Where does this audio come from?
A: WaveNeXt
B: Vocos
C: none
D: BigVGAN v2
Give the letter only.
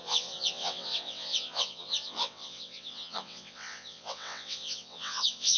A